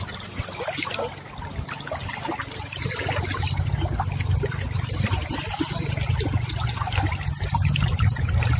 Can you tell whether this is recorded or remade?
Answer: recorded